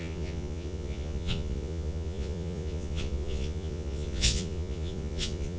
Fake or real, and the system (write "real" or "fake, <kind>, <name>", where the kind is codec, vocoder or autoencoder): fake, vocoder, Vocos